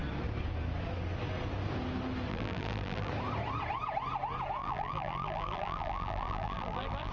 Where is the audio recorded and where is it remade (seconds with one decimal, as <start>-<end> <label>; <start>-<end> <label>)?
0.0-2.3 recorded; 2.3-3.1 remade; 3.1-4.6 recorded; 4.6-7.1 remade